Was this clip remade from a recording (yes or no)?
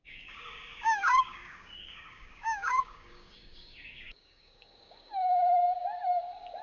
yes